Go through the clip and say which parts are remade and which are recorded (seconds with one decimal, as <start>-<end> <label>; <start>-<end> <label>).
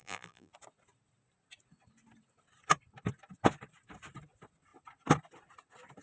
0.0-0.5 remade; 0.5-6.0 recorded